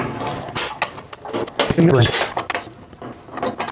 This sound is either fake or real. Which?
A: real